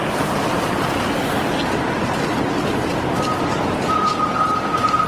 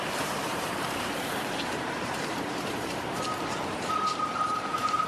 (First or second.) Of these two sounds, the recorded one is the first